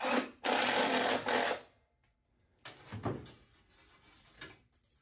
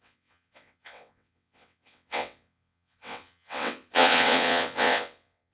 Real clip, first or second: first